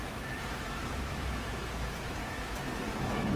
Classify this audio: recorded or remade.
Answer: remade